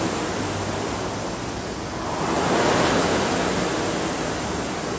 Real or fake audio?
real